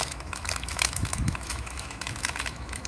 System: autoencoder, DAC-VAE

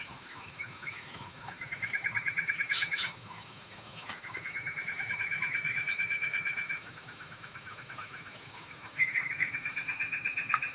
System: autoencoder, DAC-VAE